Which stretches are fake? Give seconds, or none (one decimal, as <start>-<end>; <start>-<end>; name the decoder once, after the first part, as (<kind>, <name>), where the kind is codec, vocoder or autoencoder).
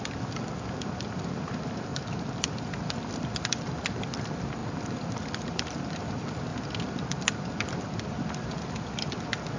0.0-6.5 (vocoder, BigVGAN v2); 7.1-9.6